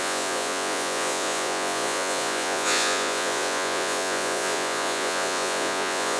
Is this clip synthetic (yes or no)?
yes